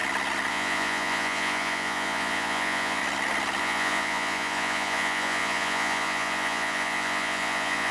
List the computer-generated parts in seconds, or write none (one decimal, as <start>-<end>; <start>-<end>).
0.5-3.0; 3.6-7.9